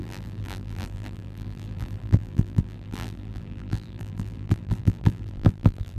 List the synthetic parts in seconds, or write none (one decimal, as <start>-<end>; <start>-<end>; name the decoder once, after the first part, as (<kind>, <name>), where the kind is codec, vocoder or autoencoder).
0.0-6.0 (vocoder, BigVGAN v2)